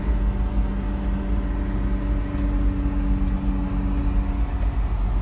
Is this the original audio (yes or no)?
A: yes